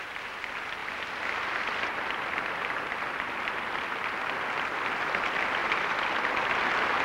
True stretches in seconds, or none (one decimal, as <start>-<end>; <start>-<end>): 0.0-0.8; 4.2-5.6; 6.3-7.0

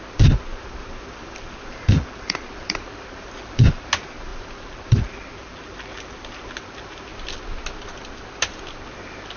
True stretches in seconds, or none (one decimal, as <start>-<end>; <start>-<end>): 0.0-0.5; 3.8-4.3; 7.1-9.4

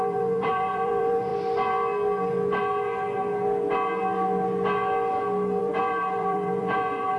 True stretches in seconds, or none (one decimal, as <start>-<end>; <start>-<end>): 1.3-5.6

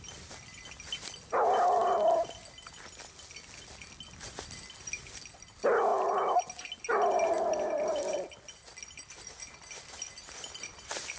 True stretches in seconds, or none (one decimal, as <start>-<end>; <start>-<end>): 0.0-11.2

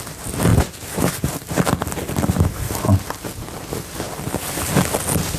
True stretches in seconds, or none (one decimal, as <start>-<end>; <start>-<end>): 0.0-5.4

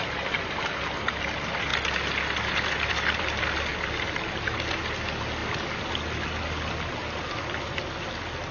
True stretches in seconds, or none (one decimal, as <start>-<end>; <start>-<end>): 0.0-3.7; 4.8-5.4; 5.9-8.5

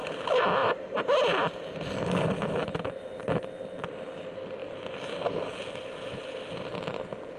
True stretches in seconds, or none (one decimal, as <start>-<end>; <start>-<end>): 1.1-2.6; 3.2-7.4